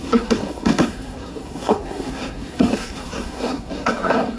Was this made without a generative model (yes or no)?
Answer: no